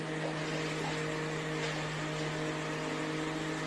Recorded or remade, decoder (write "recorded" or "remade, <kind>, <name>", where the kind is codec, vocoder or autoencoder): recorded